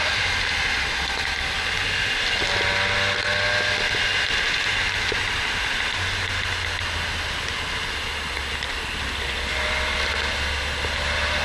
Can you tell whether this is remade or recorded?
recorded